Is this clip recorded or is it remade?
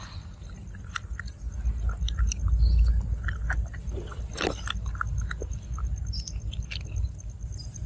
recorded